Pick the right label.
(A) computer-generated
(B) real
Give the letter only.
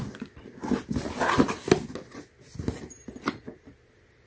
B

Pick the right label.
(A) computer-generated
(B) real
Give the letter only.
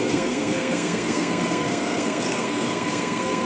A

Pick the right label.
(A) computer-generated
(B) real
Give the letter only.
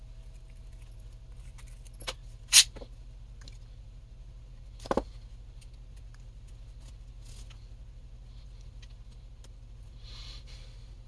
B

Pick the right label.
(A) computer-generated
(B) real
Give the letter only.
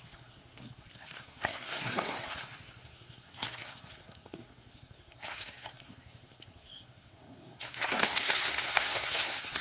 A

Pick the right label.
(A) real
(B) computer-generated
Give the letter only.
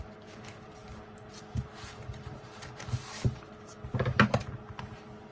A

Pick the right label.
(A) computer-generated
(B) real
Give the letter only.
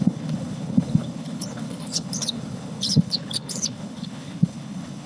A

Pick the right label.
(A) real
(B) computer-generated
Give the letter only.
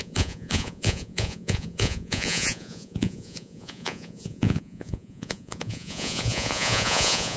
B